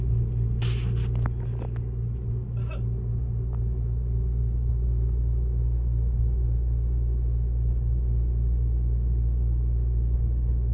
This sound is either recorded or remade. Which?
recorded